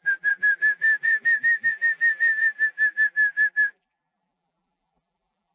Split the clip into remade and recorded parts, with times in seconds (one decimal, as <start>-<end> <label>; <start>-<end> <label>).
0.0-5.5 remade